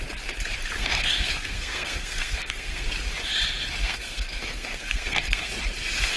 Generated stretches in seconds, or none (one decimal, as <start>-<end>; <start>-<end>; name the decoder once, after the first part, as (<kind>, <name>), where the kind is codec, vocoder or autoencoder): 0.8-2.9 (codec, SNAC); 3.8-5.5